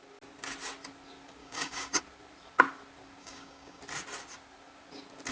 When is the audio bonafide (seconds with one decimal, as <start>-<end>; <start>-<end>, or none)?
0.0-1.4; 2.0-3.2; 3.8-5.3